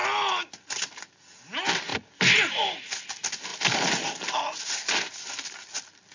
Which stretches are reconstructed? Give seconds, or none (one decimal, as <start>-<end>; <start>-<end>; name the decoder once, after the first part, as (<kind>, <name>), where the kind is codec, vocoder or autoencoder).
none